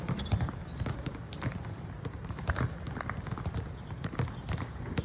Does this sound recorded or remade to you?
remade